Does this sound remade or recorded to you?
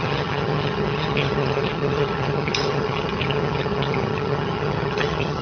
remade